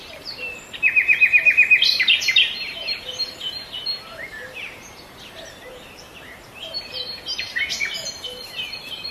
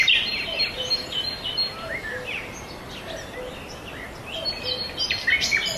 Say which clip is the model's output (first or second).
first